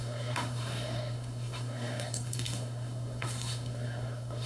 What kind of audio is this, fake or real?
fake